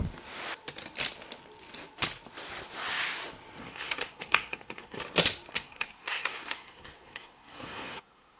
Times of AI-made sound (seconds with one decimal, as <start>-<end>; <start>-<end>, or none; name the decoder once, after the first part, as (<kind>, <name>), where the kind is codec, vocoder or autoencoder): 3.6-5.0 (codec, SNAC); 5.5-8.4